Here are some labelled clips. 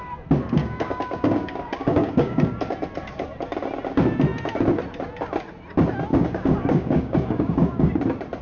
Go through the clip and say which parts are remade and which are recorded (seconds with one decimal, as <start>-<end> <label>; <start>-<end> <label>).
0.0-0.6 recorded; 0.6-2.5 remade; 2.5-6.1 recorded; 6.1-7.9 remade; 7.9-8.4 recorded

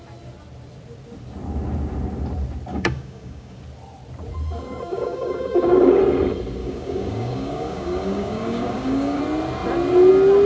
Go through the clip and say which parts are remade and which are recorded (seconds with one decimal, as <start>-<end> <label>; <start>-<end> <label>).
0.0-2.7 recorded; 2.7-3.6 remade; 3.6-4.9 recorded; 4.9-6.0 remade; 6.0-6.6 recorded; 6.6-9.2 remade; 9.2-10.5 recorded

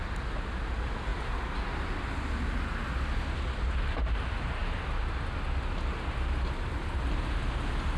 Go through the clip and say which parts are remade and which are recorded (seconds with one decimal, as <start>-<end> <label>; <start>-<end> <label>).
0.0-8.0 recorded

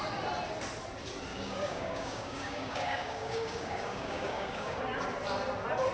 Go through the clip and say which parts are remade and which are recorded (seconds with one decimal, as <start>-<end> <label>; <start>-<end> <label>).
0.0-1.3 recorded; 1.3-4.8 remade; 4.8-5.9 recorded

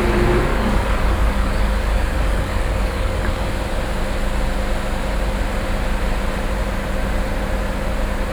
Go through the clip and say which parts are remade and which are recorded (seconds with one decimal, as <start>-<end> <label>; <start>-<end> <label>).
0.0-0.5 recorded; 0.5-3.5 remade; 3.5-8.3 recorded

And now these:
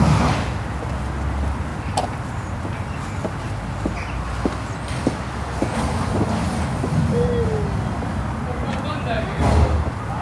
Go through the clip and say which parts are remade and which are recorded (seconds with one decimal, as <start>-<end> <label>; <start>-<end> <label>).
0.0-10.2 recorded

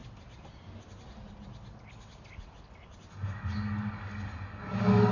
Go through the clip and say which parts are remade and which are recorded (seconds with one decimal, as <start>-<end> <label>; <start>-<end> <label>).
0.0-3.1 recorded; 3.1-5.1 remade

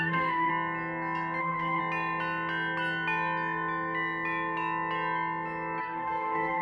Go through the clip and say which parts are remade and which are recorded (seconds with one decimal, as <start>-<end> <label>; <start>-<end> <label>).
0.0-0.5 remade; 0.5-1.4 recorded; 1.4-1.8 remade; 1.8-5.8 recorded; 5.8-6.6 remade